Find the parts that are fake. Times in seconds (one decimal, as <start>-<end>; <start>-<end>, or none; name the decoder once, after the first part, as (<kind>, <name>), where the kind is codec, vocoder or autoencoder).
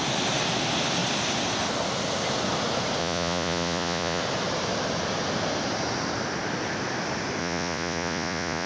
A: 3.0-4.2 (vocoder, Vocos); 7.4-8.7